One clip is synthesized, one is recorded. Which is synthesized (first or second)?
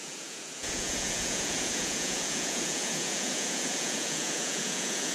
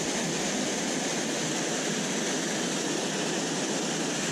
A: first